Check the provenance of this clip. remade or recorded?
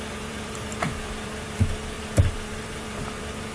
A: remade